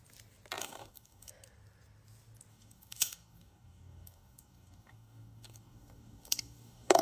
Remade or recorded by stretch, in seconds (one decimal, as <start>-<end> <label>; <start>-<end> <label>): 0.0-0.6 recorded; 0.6-1.3 remade; 1.3-2.5 recorded; 2.5-7.0 remade